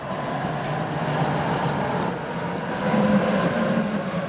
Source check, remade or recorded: recorded